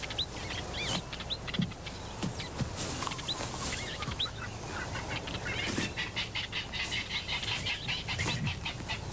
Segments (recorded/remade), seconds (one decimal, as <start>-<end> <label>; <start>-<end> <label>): 0.0-3.7 recorded; 3.7-4.6 remade; 4.6-9.1 recorded